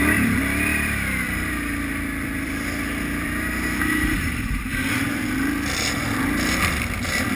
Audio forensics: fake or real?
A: fake